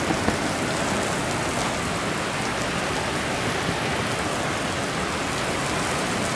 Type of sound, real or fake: real